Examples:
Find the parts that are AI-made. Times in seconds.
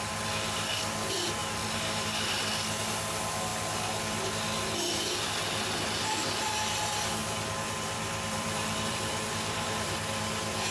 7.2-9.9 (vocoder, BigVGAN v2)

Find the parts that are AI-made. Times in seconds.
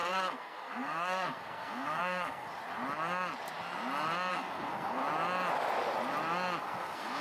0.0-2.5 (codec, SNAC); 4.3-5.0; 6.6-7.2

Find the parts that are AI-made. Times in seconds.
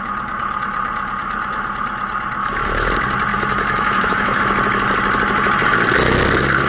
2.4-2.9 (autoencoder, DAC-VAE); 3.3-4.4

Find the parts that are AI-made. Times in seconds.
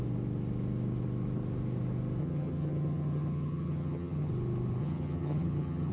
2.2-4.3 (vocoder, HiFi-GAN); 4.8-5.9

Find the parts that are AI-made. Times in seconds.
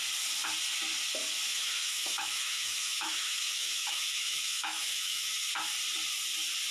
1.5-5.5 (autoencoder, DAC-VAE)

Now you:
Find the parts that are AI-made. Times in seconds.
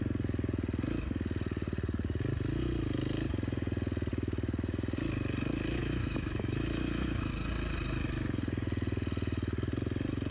5.8-7.3 (autoencoder, DAC-VAE)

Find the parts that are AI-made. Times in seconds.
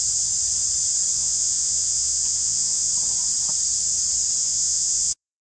1.1-2.9 (vocoder, Vocos); 4.4-5.4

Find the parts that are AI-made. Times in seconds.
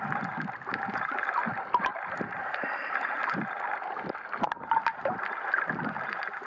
1.9-2.4 (vocoder, BigVGAN v2)